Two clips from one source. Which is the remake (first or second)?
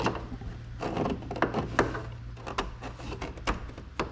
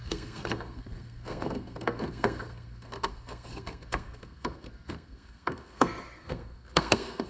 second